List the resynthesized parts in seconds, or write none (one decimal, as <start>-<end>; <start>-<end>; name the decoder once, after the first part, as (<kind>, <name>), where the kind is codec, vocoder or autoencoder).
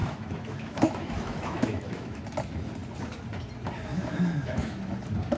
0.0-2.2 (autoencoder, DAC-VAE); 3.9-4.8